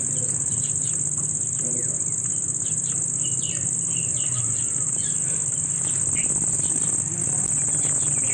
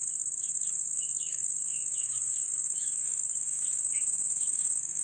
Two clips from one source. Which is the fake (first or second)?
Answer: second